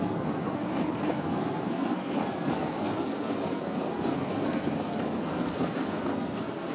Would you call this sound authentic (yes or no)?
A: no